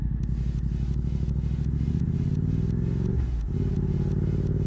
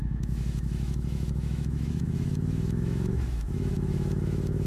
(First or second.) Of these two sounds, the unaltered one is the first